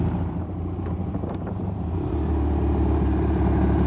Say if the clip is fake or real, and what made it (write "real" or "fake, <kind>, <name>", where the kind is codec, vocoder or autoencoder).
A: fake, vocoder, BigVGAN v2